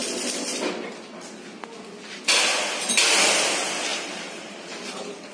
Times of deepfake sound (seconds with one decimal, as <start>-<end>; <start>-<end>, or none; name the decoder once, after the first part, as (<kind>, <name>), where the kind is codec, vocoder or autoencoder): 3.9-5.3 (vocoder, BigVGAN v2)